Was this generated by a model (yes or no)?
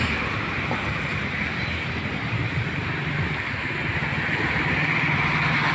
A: no